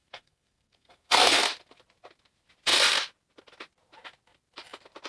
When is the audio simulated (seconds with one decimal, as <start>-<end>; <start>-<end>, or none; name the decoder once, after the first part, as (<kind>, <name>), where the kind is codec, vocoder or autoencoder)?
0.0-1.4 (codec, SNAC)